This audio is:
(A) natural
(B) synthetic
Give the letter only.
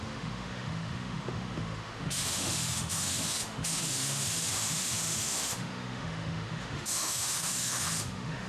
B